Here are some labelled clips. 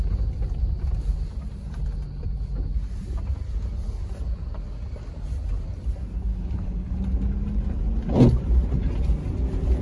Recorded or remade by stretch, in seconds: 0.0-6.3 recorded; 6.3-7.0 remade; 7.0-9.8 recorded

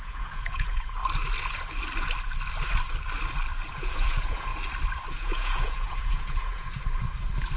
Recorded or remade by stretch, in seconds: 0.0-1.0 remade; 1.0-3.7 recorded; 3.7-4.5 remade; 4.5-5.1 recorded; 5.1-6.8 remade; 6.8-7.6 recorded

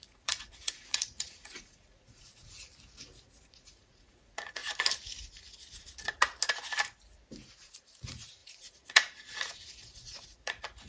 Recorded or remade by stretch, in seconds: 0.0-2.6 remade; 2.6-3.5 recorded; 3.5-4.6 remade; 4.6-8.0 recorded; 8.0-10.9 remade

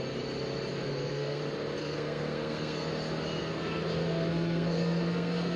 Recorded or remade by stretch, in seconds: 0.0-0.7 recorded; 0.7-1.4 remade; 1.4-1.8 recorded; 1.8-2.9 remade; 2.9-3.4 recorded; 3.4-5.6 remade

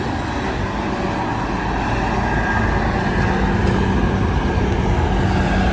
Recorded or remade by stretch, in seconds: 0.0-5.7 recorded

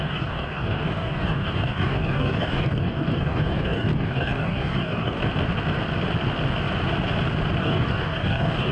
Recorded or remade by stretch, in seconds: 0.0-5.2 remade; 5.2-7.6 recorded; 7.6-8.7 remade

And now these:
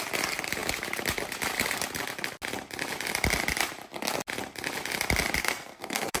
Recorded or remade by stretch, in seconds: 0.0-5.4 recorded; 5.4-6.2 remade